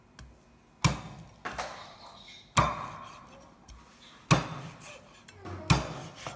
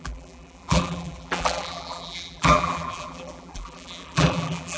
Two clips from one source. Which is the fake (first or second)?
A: second